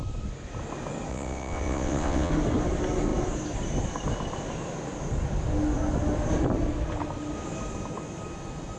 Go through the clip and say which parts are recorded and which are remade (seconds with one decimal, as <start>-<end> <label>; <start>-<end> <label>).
0.0-1.1 recorded; 1.1-2.3 remade; 2.3-8.8 recorded